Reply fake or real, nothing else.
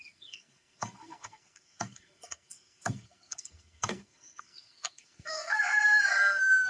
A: fake